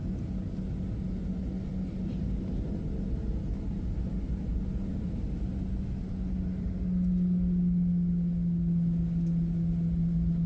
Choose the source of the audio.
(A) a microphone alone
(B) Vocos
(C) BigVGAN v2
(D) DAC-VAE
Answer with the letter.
A